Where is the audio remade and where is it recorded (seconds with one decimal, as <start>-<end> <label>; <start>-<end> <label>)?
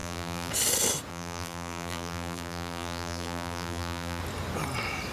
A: 0.0-0.5 remade; 0.5-1.1 recorded; 1.1-4.2 remade; 4.2-5.1 recorded